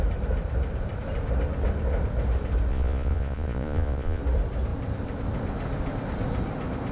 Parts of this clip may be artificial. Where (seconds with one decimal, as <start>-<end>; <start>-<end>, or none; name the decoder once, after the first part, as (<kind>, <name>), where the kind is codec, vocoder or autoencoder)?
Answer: 2.7-4.2 (vocoder, Vocos)